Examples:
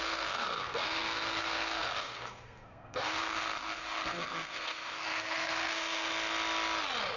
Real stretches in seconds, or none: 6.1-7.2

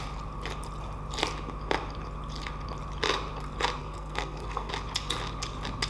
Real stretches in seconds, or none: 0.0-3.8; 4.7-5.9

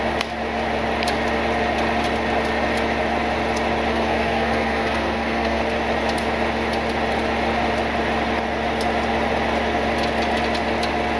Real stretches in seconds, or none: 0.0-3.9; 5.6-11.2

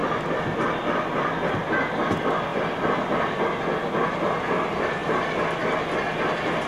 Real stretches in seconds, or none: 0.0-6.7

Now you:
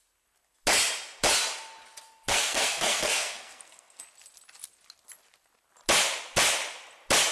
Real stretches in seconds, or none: 0.0-2.3; 4.0-7.3

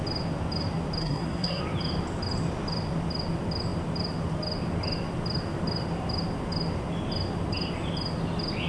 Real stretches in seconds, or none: 0.0-1.0; 1.6-8.7

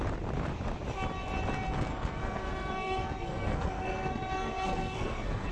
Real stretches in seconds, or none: 0.0-1.9